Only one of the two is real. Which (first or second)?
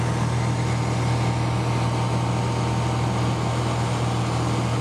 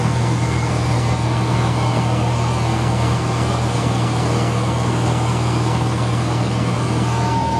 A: first